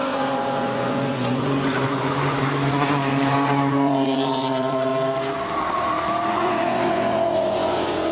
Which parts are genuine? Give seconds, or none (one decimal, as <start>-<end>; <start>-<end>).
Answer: 4.9-6.3